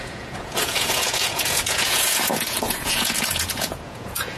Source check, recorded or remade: remade